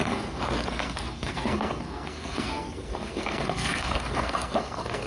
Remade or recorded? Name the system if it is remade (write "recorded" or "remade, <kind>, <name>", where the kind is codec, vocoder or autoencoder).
remade, codec, SNAC